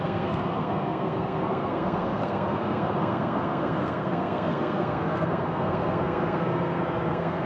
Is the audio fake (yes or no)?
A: yes